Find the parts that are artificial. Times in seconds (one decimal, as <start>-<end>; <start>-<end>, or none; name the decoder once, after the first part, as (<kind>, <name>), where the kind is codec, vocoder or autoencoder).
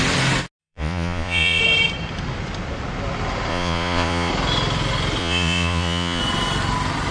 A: 0.6-1.6 (vocoder, Vocos); 3.5-4.3; 5.2-6.2